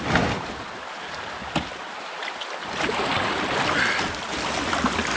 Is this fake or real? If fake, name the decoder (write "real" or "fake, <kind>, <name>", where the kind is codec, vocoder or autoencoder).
real